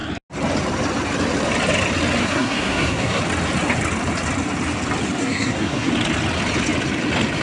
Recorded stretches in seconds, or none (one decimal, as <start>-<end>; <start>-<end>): 0.0-2.2; 3.2-5.2; 5.9-7.4